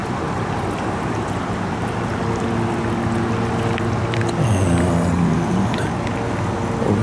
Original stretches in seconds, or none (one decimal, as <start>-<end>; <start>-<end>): 0.6-7.0